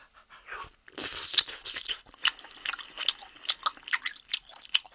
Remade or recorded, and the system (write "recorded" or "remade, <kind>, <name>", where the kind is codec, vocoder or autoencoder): recorded